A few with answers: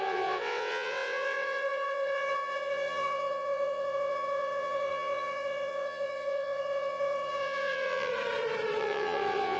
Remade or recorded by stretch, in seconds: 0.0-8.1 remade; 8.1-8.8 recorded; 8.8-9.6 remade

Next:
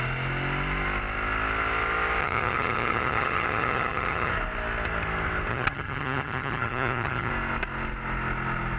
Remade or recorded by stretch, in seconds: 0.0-2.2 recorded; 2.2-4.3 remade; 4.3-5.5 recorded; 5.5-7.3 remade; 7.3-8.8 recorded

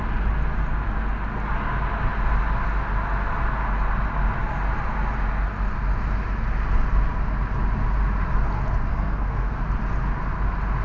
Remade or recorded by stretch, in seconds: 0.0-8.9 recorded; 8.9-9.6 remade; 9.6-10.8 recorded